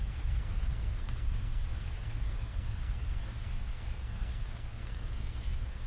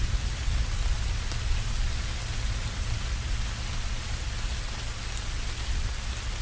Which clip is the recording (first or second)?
second